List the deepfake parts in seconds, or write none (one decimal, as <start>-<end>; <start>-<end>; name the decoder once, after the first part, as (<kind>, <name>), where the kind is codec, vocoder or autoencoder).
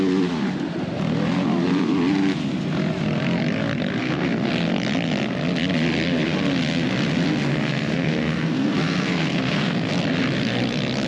4.0-4.5 (codec, SNAC); 7.5-9.9